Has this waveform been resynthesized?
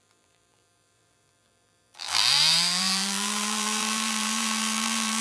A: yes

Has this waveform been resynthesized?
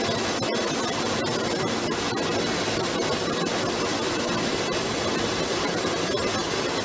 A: no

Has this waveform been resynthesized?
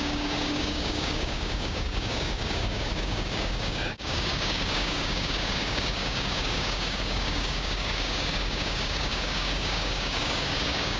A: yes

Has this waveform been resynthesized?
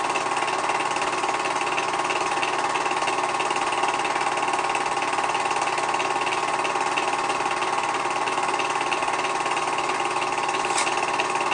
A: no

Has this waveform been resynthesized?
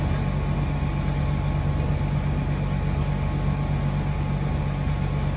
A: no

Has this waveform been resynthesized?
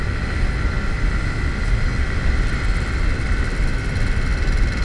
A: no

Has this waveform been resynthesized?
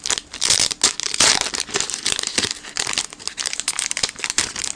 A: no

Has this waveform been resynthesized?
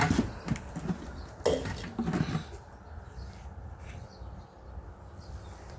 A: no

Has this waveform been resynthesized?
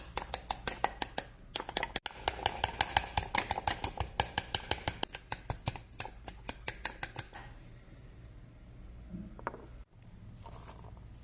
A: no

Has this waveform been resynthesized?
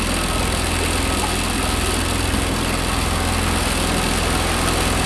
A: no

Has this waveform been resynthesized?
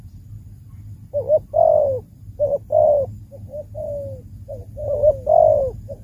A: no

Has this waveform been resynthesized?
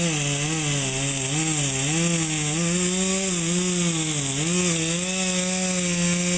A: no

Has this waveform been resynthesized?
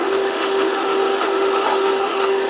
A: yes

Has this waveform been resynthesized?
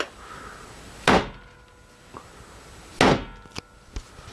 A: no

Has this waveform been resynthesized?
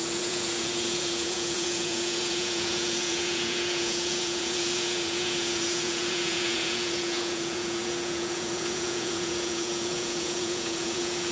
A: yes